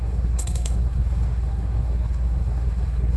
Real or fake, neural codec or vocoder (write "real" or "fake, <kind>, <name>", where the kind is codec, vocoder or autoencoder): fake, codec, SNAC